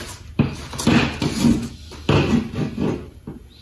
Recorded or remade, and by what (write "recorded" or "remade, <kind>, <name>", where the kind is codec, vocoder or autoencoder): recorded